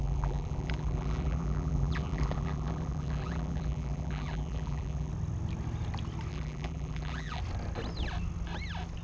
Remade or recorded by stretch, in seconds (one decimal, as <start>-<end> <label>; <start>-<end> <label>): 0.0-5.1 remade; 5.1-6.3 recorded; 6.3-7.4 remade; 7.4-9.0 recorded